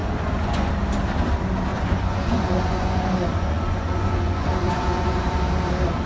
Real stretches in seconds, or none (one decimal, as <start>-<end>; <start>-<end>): 0.7-1.7; 5.4-6.1